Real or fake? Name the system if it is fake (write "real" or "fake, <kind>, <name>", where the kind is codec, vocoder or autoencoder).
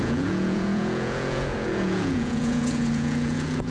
fake, vocoder, Vocos